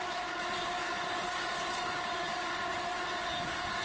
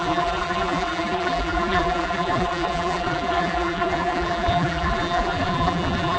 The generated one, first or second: second